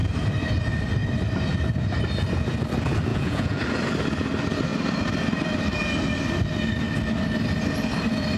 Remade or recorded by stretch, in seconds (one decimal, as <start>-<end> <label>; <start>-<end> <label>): 0.0-3.1 recorded; 3.1-3.6 remade; 3.6-8.4 recorded